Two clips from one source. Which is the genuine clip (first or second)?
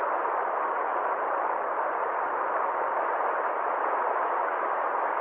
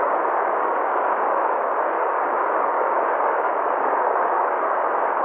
first